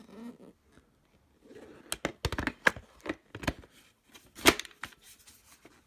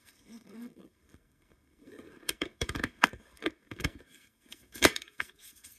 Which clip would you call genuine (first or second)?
first